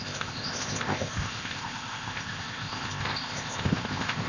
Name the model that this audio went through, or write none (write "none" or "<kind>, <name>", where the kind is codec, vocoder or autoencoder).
codec, ZipCodec